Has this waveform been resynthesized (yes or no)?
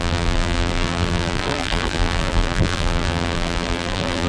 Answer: yes